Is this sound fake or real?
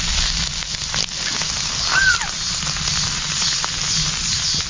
real